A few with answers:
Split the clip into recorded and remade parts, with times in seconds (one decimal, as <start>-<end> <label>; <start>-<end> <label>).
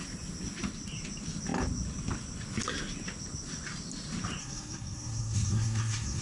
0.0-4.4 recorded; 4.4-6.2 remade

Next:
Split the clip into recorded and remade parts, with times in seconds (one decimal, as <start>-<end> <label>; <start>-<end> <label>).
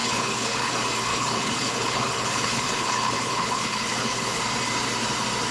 0.0-0.7 remade; 0.7-1.1 recorded; 1.1-4.4 remade; 4.4-5.5 recorded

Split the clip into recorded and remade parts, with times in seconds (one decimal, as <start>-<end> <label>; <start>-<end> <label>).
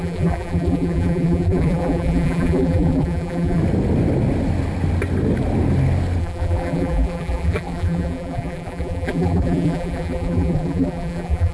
0.0-3.6 remade; 3.6-6.2 recorded; 6.2-11.5 remade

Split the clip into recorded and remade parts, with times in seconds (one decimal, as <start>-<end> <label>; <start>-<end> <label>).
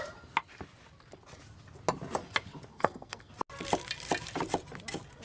0.0-2.7 recorded; 2.7-3.3 remade; 3.3-5.2 recorded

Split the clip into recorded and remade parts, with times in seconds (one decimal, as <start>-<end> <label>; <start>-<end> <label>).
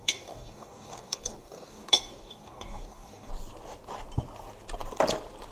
0.0-3.3 remade; 3.3-5.5 recorded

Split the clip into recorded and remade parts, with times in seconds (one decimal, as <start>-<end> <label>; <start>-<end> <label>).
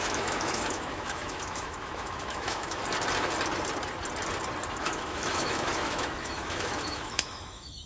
0.0-2.8 remade; 2.8-4.8 recorded; 4.8-7.9 remade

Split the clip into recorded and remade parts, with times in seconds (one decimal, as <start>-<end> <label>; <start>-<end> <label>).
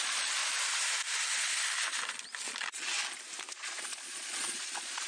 0.0-0.4 remade; 0.4-3.5 recorded; 3.5-5.1 remade